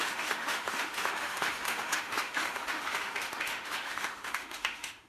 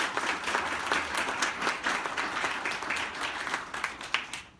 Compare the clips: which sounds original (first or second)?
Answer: second